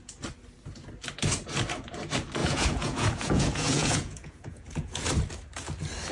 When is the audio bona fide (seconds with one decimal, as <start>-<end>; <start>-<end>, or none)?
0.0-2.4; 5.1-6.1